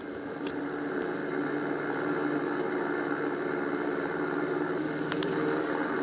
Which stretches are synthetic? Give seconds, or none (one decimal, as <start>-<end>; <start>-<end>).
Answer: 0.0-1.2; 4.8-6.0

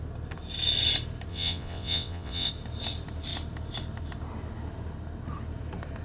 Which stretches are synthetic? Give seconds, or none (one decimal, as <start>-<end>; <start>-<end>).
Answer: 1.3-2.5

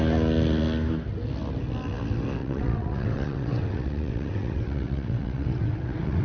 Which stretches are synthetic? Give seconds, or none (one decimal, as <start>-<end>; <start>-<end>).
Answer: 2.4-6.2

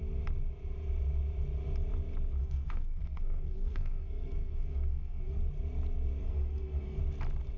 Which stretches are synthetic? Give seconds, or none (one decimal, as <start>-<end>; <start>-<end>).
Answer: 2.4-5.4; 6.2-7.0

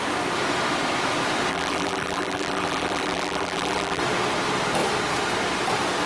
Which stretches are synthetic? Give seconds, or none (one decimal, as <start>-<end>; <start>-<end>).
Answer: 1.5-4.0

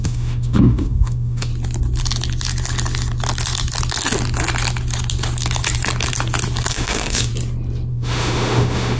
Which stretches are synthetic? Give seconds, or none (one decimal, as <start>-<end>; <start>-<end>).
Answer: 0.0-1.5; 6.7-7.3; 7.9-9.0

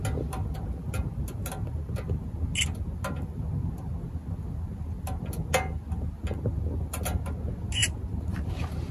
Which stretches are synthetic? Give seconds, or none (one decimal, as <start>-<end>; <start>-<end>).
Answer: none

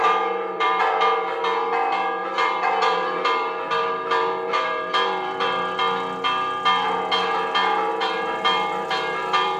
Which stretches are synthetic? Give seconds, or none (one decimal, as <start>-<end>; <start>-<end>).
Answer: 0.0-0.8; 2.2-5.8; 7.9-9.6